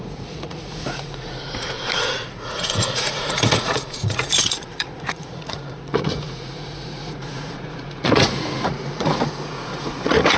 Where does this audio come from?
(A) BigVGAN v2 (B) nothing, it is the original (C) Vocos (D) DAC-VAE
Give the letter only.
C